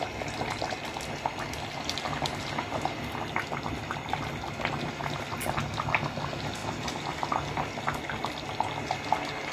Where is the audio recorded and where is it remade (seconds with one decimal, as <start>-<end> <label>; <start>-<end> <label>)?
0.0-9.5 recorded